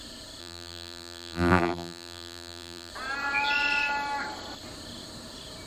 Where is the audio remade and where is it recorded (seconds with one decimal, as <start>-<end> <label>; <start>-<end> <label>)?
0.0-0.4 recorded; 0.4-2.9 remade; 2.9-5.7 recorded